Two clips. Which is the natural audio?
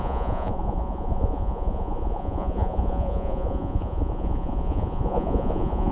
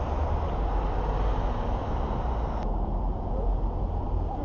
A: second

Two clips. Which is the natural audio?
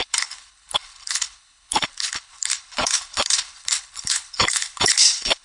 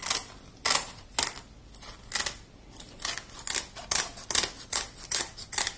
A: second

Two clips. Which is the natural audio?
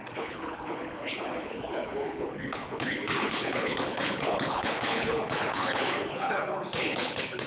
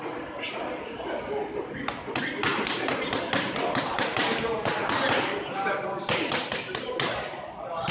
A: second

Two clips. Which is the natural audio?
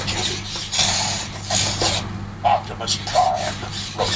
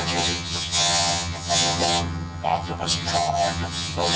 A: first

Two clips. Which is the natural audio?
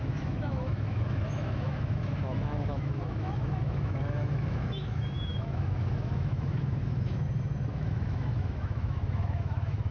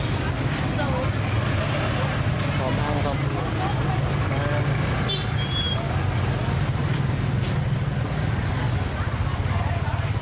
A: second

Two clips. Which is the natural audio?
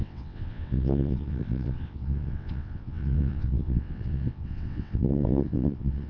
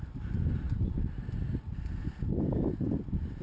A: second